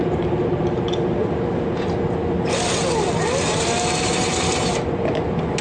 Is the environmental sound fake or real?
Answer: real